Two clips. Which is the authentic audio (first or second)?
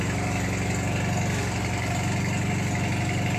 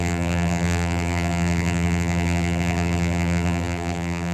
first